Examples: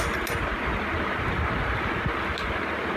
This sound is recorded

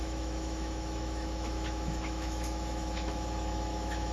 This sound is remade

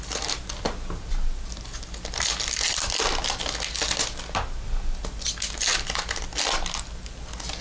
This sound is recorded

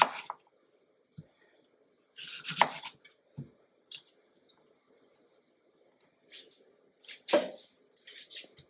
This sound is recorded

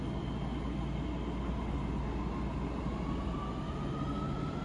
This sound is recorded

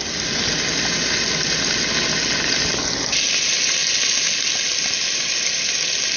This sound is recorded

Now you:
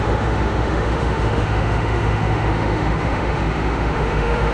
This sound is remade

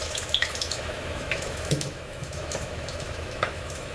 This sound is remade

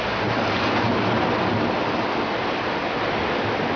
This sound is recorded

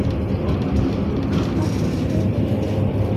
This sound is recorded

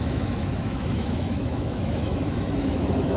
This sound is remade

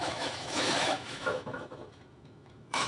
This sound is remade